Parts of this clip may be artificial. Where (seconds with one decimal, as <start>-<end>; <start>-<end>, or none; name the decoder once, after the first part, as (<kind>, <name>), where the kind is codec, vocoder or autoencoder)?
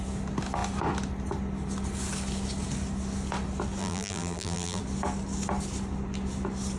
3.8-4.8 (vocoder, BigVGAN v2)